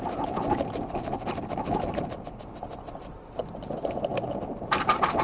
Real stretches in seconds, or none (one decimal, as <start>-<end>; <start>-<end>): 0.0-5.2